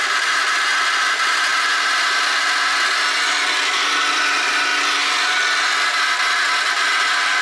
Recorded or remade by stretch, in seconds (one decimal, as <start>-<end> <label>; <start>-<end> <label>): 0.0-7.4 recorded